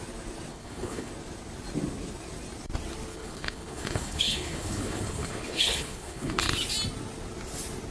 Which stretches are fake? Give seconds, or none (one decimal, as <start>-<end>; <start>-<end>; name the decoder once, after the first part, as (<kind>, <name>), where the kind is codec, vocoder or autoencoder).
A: 0.5-1.1 (codec, HILCodec); 3.1-6.4